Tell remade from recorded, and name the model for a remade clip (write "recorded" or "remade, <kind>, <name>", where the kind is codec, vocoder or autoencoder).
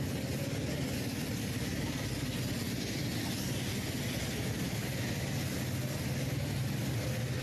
recorded